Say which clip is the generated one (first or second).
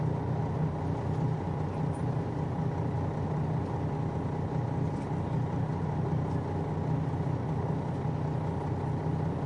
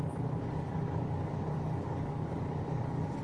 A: second